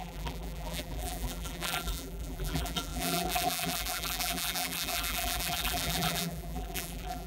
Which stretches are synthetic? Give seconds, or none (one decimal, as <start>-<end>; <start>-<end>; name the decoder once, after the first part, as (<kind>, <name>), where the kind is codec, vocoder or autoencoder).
0.0-7.3 (vocoder, BigVGAN v2)